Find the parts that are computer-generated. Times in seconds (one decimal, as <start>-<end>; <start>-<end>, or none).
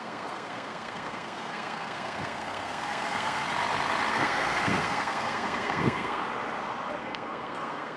0.0-3.4; 4.1-6.2; 7.0-8.0